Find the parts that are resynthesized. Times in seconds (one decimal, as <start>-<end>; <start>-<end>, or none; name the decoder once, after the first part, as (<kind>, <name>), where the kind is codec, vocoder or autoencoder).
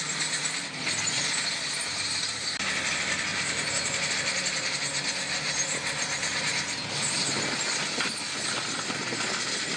3.3-4.1 (vocoder, BigVGAN v2)